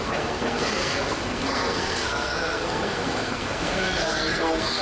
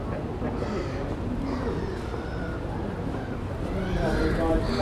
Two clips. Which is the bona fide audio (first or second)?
second